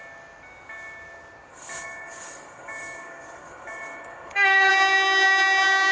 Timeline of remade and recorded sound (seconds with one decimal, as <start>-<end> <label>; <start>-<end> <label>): 0.0-1.5 recorded; 1.5-4.7 remade; 4.7-5.9 recorded